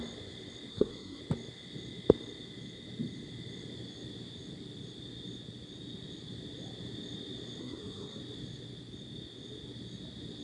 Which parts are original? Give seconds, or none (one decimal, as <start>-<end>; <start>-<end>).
0.0-0.7; 1.2-7.6; 8.2-10.4